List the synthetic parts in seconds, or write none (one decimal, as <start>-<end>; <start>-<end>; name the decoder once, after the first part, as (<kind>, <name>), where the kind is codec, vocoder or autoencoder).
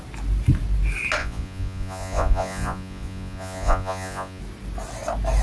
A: 1.2-4.4 (vocoder, Vocos)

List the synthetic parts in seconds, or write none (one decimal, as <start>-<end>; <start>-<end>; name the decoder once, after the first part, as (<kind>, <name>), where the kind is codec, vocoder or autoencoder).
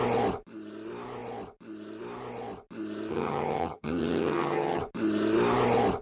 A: 3.1-4.8 (vocoder, HiFi-GAN)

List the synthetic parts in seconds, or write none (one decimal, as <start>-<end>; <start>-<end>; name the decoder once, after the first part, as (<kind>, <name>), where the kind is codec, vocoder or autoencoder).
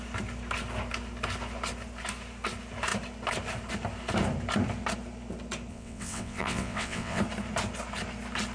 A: 5.7-7.2 (vocoder, WaveNeXt)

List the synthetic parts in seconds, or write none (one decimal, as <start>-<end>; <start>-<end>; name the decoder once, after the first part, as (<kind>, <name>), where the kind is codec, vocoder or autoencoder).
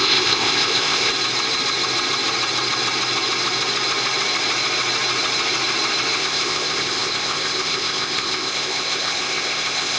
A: 0.0-1.1 (codec, ZipCodec); 6.2-10.0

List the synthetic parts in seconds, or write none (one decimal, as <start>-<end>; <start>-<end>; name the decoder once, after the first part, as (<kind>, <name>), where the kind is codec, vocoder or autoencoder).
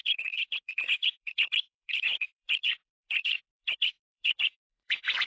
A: 0.0-5.3 (vocoder, Vocos)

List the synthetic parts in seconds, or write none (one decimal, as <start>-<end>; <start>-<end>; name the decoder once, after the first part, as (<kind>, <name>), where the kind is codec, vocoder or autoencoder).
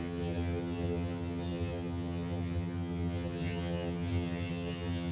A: 0.0-5.1 (vocoder, HiFi-GAN)